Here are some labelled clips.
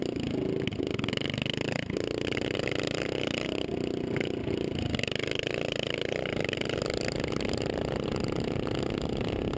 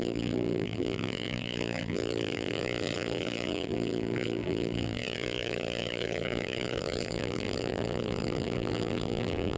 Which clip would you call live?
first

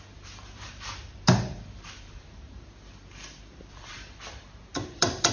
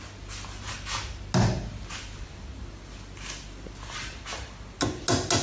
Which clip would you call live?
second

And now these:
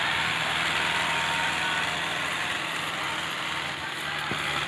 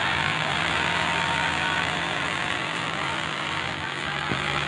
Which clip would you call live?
first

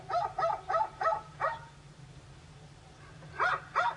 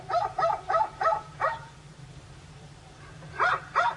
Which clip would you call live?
first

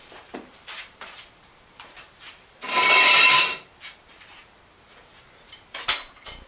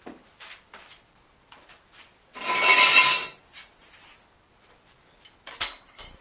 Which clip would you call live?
second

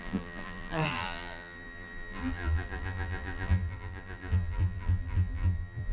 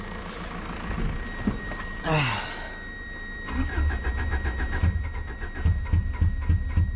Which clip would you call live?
second